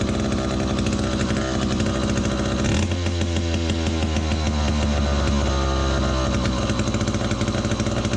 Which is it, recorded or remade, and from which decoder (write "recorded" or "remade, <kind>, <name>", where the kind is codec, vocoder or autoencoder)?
recorded